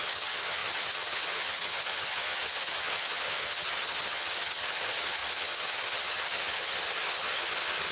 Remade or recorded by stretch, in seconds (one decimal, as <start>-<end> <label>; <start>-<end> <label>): 0.0-7.9 remade